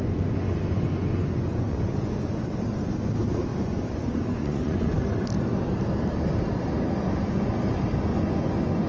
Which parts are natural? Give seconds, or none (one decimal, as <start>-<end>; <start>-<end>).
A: 2.4-3.5; 4.9-8.1